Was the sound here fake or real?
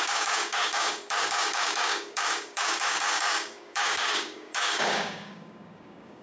fake